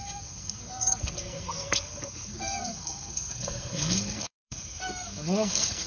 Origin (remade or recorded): remade